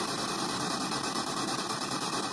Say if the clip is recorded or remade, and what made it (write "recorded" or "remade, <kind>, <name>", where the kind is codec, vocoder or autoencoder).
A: remade, vocoder, BigVGAN v2